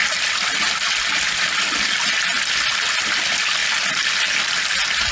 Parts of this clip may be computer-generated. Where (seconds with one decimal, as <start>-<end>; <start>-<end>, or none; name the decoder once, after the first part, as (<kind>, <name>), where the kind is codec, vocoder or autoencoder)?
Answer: none